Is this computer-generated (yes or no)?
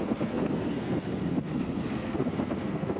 yes